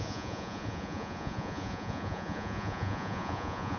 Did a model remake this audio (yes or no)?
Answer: yes